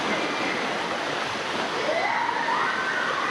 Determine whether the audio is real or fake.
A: real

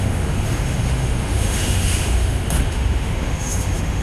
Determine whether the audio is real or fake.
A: fake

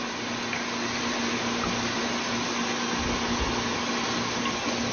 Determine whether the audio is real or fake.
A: real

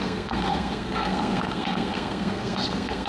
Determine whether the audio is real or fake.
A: fake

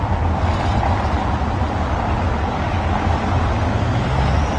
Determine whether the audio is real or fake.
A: real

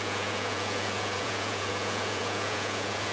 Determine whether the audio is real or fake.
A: fake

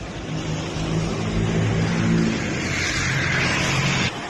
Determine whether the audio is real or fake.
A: real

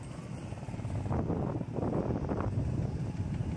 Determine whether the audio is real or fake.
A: real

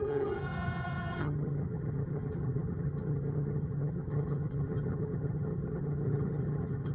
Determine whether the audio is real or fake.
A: fake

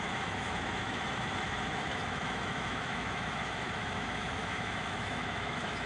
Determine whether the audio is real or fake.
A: fake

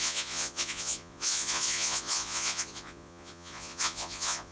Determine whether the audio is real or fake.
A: fake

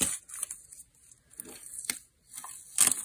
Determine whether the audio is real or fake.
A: real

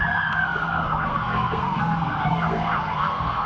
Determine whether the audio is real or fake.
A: fake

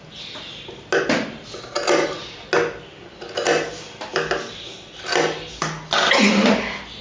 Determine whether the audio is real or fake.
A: real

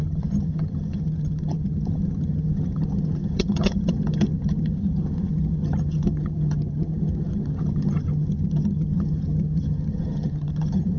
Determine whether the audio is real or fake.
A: fake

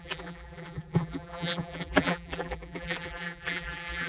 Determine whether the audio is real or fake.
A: fake